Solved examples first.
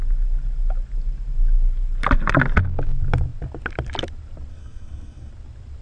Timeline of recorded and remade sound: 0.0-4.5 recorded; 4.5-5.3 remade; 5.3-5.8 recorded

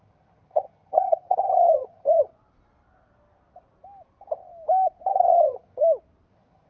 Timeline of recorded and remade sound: 0.0-2.3 remade; 2.3-5.1 recorded; 5.1-5.8 remade; 5.8-6.3 recorded; 6.3-6.7 remade

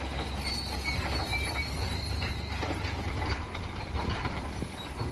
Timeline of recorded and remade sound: 0.0-1.3 recorded; 1.3-4.4 remade; 4.4-5.1 recorded

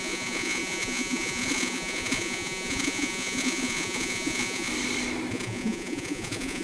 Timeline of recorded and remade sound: 0.0-4.7 remade; 4.7-5.3 recorded; 5.3-6.6 remade

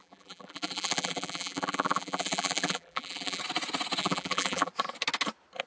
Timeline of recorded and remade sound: 0.0-3.4 remade; 3.4-4.0 recorded; 4.0-4.7 remade; 4.7-5.7 recorded